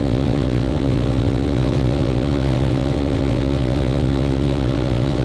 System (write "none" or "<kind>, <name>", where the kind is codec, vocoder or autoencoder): vocoder, WaveNeXt